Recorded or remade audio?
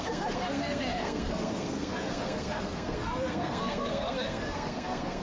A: remade